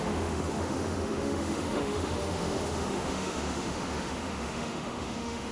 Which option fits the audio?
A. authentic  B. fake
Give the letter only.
B